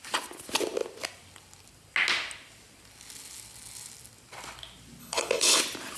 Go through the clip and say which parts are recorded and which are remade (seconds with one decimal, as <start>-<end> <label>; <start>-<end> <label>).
0.0-5.0 recorded; 5.0-5.6 remade; 5.6-6.0 recorded